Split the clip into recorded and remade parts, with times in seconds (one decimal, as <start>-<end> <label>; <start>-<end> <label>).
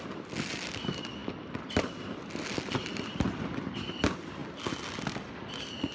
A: 0.0-5.9 recorded